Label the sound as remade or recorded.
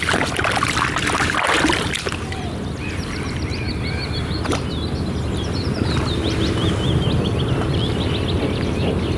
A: recorded